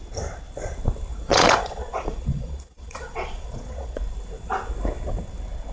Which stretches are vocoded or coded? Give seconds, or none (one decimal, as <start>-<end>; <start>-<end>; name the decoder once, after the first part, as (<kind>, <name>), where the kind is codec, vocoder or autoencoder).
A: 1.1-4.0 (vocoder, Vocos)